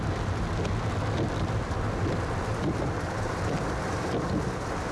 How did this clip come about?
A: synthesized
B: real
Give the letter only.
B